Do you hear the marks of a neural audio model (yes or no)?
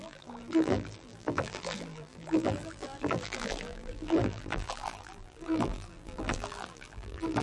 yes